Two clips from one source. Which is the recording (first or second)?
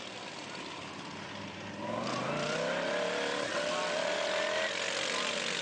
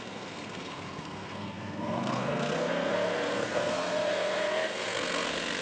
first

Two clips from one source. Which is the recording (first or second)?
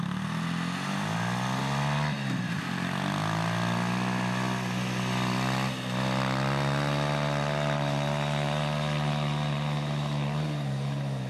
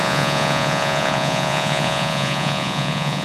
first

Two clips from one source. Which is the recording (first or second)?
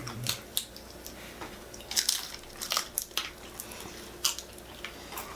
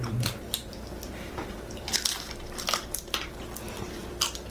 first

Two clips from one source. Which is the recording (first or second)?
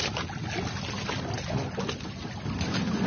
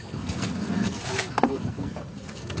first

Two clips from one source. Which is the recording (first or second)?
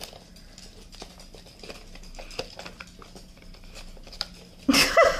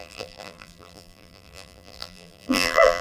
first